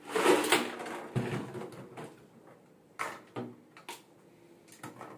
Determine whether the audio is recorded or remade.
recorded